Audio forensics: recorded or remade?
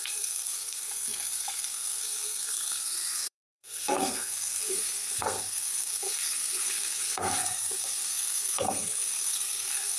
remade